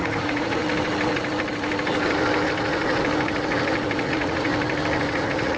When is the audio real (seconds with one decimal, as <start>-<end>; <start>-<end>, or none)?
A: 0.6-4.0; 4.5-5.1